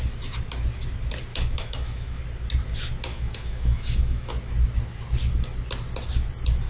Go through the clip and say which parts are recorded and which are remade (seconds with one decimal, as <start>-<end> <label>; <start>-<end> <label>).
0.0-1.3 recorded; 1.3-2.2 remade; 2.2-3.1 recorded; 3.1-4.3 remade; 4.3-6.7 recorded